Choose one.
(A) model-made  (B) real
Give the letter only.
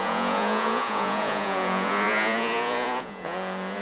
A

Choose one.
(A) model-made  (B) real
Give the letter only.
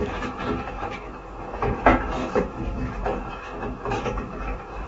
A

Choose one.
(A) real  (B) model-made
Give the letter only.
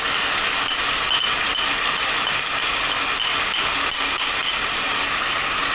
A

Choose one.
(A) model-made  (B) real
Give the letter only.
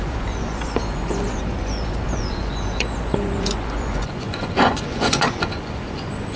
A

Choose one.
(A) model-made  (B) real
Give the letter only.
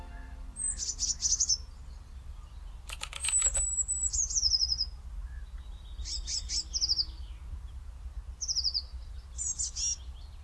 B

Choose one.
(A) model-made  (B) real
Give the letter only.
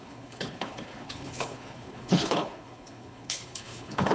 A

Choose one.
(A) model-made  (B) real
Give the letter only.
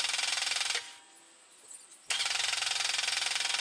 B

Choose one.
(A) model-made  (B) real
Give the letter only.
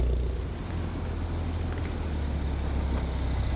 B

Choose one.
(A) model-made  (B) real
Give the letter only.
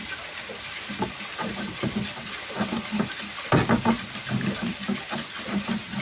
B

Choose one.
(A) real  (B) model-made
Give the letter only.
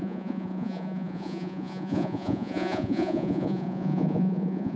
B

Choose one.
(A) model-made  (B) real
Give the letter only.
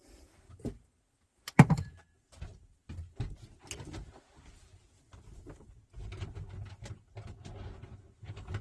B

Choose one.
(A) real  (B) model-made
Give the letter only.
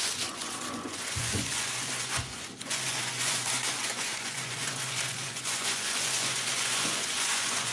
B